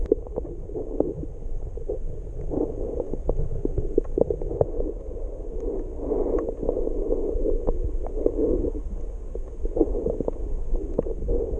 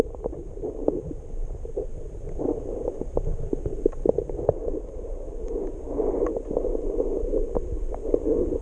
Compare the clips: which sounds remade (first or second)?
second